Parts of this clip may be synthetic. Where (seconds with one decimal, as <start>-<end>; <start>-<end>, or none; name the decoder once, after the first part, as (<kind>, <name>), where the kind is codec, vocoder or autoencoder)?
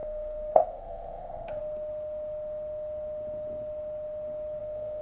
0.0-1.6 (codec, SNAC); 4.6-5.0